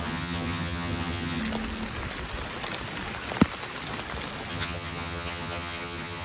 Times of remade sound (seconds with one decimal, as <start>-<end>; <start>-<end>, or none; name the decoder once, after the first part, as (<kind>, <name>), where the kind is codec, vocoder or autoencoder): 0.0-1.4 (vocoder, HiFi-GAN); 4.5-6.2